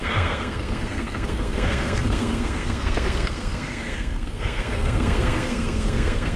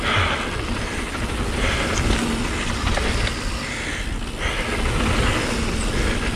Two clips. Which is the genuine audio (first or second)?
second